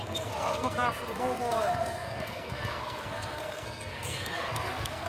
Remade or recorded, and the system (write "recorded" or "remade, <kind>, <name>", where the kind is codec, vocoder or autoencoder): remade, codec, SNAC